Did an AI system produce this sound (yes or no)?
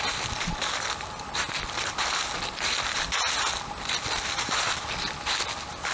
no